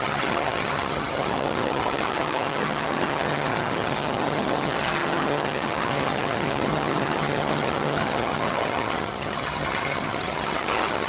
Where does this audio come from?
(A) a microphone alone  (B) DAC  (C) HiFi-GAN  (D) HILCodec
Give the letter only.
C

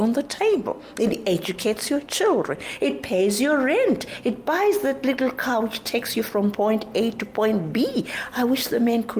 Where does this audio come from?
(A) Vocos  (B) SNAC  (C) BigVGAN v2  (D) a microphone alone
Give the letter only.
D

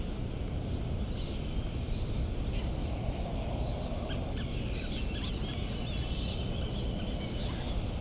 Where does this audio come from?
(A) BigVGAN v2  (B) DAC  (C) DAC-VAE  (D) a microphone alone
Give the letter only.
D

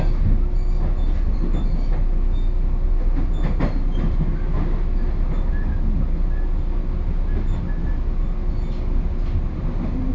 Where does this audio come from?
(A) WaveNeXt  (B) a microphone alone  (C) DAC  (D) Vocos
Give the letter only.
B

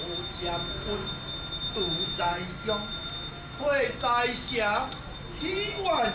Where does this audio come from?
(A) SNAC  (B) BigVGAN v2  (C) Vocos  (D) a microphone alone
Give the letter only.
D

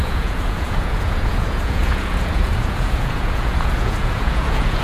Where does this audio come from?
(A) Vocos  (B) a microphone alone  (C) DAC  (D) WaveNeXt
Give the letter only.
A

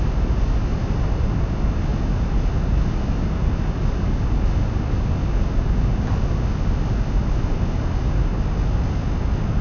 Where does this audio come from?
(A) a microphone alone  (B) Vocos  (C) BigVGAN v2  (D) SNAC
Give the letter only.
A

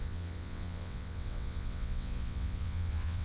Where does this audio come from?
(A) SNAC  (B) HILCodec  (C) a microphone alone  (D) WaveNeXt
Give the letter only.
D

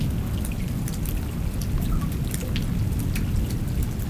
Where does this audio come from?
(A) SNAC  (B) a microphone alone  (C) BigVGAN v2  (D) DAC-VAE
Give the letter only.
B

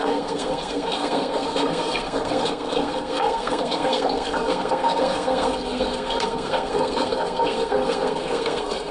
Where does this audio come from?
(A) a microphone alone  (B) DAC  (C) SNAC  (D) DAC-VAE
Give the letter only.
C